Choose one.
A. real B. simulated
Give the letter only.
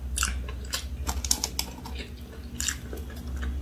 A